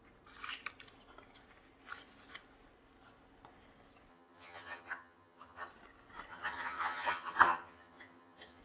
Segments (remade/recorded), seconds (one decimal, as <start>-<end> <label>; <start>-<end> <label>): 0.0-4.1 recorded; 4.1-5.7 remade; 5.7-6.3 recorded; 6.3-8.6 remade